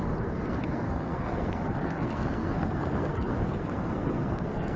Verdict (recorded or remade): remade